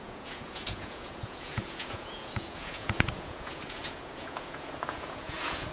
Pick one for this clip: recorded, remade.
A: remade